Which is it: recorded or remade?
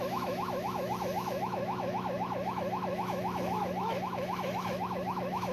remade